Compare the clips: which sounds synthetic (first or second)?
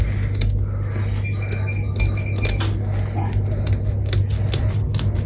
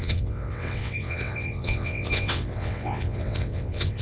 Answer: second